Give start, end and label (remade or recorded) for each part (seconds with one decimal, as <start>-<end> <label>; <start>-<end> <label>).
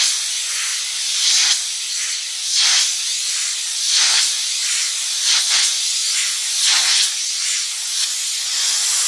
0.0-0.7 remade; 0.7-5.5 recorded; 5.5-9.1 remade